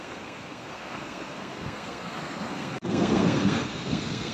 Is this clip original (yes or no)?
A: no